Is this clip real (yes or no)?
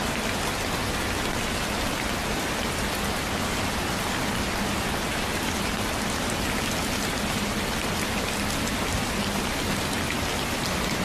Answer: yes